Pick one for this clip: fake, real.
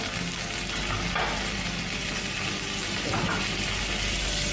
real